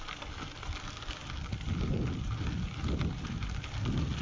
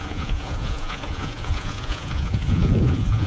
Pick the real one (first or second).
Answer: first